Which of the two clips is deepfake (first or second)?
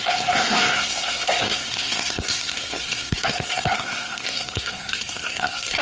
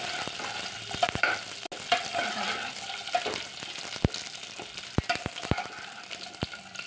first